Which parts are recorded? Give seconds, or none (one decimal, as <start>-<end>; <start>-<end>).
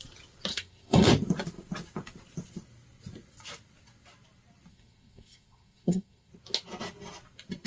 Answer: 0.0-0.5; 1.1-4.7; 6.3-7.7